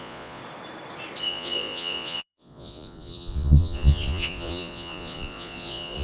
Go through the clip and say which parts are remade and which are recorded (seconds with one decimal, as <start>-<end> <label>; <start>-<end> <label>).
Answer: 0.0-0.4 remade; 0.4-1.2 recorded; 1.2-6.0 remade